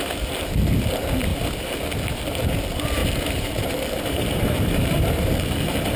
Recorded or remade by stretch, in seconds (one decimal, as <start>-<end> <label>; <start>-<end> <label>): 0.0-3.0 recorded; 3.0-5.3 remade; 5.3-6.0 recorded